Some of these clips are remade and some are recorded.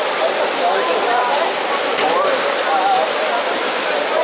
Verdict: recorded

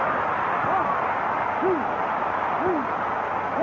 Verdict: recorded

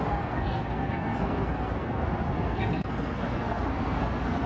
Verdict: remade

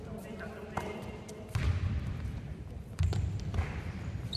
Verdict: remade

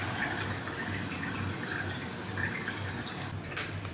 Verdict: recorded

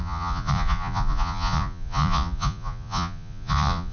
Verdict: remade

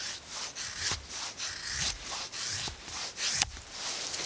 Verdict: recorded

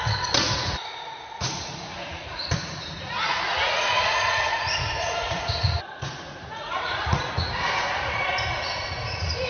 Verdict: remade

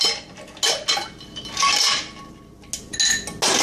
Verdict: recorded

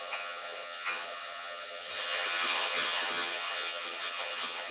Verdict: remade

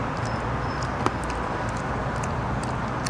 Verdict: recorded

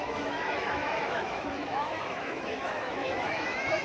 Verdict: remade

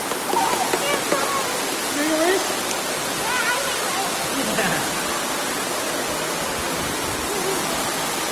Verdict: recorded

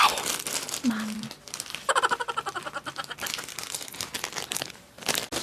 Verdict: recorded